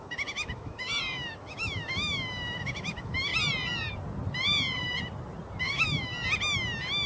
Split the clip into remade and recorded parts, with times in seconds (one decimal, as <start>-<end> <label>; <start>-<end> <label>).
0.0-3.3 remade; 3.3-5.6 recorded; 5.6-6.1 remade; 6.1-7.1 recorded